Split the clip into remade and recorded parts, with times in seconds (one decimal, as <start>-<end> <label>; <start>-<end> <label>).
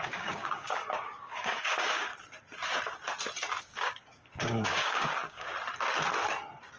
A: 0.0-2.1 remade; 2.1-3.6 recorded; 3.6-5.5 remade; 5.5-6.8 recorded